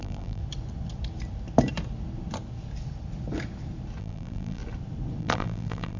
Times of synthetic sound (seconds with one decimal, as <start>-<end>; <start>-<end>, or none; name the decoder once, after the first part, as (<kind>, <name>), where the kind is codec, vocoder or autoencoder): 0.0-0.4 (vocoder, BigVGAN v2); 4.0-4.6; 5.2-6.0